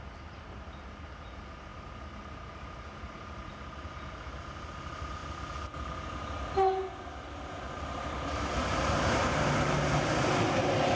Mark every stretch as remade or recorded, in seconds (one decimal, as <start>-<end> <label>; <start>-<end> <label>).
0.0-11.0 recorded